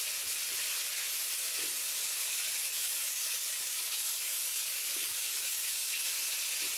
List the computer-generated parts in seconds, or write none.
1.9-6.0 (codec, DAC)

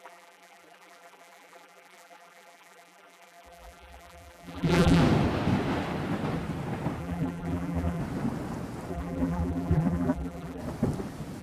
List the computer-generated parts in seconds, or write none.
0.0-5.0 (vocoder, BigVGAN v2); 7.0-8.0; 8.9-10.6

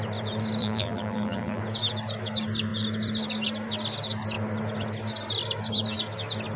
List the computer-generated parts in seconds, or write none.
0.6-1.6 (vocoder, BigVGAN v2)

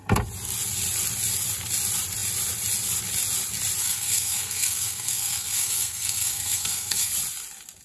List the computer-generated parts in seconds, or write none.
3.8-7.1 (codec, SNAC)

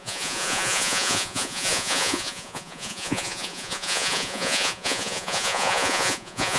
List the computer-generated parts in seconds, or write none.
0.0-6.6 (vocoder, Vocos)

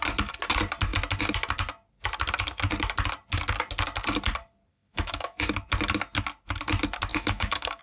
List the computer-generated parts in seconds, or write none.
4.7-5.4 (autoencoder, DAC-VAE); 7.1-7.8